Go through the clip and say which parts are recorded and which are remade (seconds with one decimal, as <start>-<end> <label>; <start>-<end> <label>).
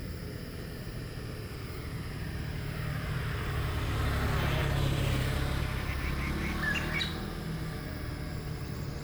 0.0-3.4 remade; 3.4-4.6 recorded; 4.6-5.6 remade; 5.6-9.0 recorded